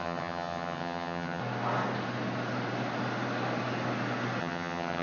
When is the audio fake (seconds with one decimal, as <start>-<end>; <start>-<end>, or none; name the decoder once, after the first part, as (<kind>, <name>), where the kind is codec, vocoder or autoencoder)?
0.0-1.4 (vocoder, HiFi-GAN); 4.4-5.0